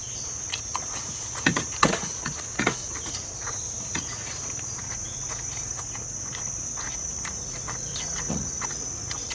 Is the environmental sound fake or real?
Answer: fake